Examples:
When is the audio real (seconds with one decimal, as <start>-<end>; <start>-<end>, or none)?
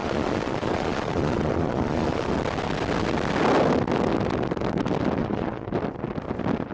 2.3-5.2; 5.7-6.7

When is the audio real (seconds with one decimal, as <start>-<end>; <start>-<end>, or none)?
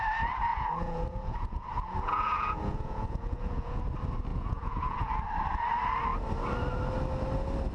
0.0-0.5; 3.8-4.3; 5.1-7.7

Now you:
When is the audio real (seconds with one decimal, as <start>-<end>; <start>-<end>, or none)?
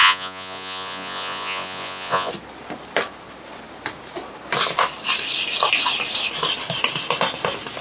2.3-7.8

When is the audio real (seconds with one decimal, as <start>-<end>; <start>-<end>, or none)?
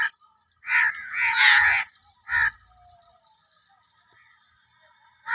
0.0-1.0; 1.9-5.3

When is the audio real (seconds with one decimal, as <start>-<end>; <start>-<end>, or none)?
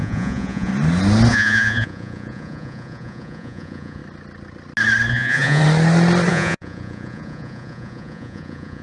0.7-1.3; 4.0-5.1; 5.6-6.3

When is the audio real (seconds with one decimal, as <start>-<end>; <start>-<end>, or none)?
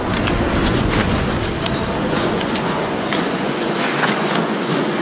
0.0-0.6; 1.3-2.0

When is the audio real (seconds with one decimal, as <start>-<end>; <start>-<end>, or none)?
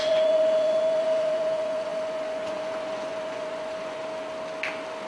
4.0-5.1